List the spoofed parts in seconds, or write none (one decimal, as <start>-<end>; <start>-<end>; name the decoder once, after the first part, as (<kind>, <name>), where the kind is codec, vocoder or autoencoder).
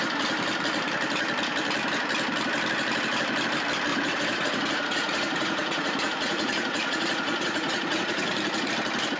3.9-8.7 (vocoder, Vocos)